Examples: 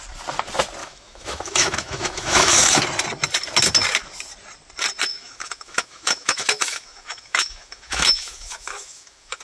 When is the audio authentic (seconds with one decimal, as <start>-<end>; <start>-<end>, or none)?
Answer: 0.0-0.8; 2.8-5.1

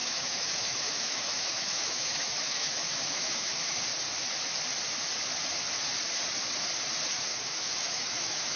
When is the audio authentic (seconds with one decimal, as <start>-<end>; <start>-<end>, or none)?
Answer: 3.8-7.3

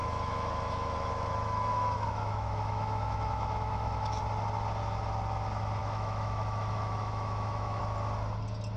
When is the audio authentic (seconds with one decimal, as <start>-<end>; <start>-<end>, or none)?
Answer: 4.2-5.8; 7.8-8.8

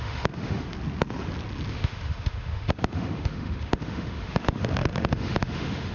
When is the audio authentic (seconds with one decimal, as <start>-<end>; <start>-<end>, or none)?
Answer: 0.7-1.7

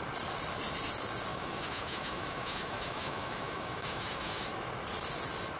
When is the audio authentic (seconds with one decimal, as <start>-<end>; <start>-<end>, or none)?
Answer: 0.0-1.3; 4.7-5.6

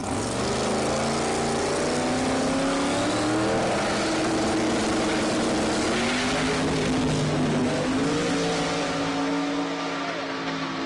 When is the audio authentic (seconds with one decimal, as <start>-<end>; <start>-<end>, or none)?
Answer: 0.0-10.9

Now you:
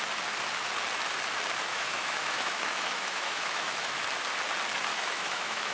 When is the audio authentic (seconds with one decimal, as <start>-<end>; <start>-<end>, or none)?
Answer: 0.0-1.7; 3.9-4.9